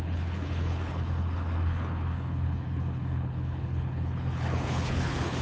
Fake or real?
fake